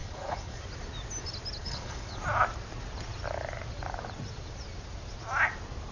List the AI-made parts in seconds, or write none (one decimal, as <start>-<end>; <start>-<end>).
0.0-0.6; 1.6-2.2

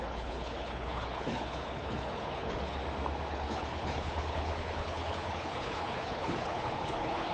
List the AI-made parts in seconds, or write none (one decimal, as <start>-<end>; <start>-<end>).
0.0-2.8; 3.3-7.3

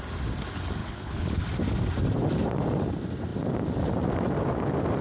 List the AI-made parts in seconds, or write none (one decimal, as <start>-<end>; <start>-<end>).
0.8-1.4

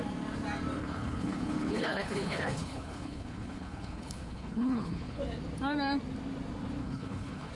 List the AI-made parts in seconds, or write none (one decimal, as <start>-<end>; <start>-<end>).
0.8-5.2; 6.8-7.5

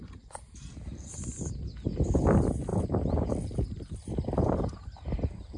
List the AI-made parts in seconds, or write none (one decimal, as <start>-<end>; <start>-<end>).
none

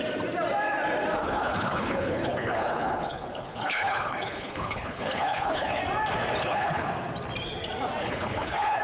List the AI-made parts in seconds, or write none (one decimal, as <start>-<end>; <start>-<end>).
1.2-5.8; 6.4-6.9; 8.0-8.8